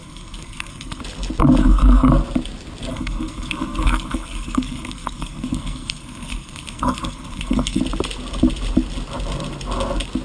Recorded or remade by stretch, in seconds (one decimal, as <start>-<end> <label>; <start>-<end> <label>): 0.0-1.0 remade; 1.0-1.6 recorded; 1.6-2.1 remade; 2.1-2.9 recorded; 2.9-7.8 remade; 7.8-10.2 recorded